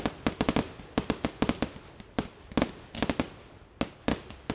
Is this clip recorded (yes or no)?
yes